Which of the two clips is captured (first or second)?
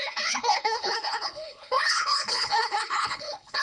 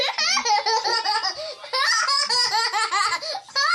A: second